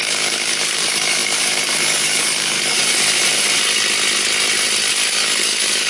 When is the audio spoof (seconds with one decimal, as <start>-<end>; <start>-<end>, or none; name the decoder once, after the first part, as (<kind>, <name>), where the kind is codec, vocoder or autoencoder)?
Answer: 0.0-2.9 (codec, DAC); 4.9-5.9